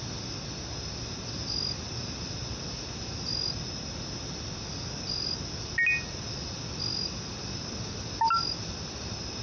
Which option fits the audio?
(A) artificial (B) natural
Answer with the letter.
B